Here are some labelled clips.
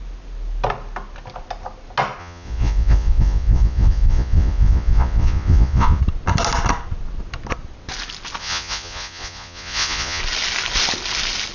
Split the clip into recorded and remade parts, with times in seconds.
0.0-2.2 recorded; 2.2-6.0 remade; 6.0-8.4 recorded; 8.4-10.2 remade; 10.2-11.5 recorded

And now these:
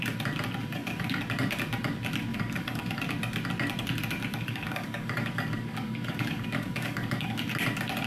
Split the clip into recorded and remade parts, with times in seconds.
0.0-0.6 recorded; 0.6-1.2 remade; 1.2-2.3 recorded; 2.3-3.0 remade; 3.0-4.3 recorded; 4.3-7.5 remade; 7.5-8.1 recorded

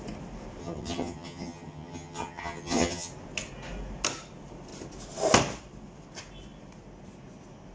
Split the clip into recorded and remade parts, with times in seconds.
0.0-0.6 recorded; 0.6-3.1 remade; 3.1-7.7 recorded

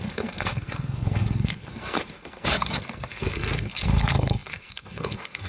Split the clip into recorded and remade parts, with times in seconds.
0.0-5.5 remade

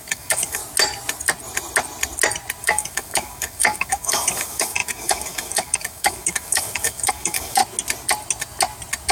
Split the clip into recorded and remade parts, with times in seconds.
0.0-0.6 remade; 0.6-2.6 recorded; 2.6-7.6 remade; 7.6-9.1 recorded

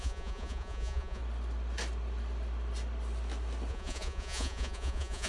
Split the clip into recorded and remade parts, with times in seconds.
0.0-1.2 remade; 1.2-3.7 recorded; 3.7-5.3 remade